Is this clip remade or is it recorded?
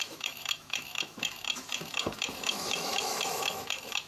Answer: remade